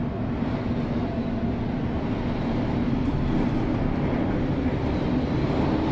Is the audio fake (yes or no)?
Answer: no